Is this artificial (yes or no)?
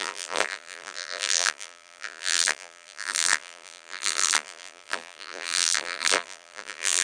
yes